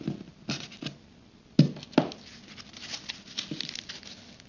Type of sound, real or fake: real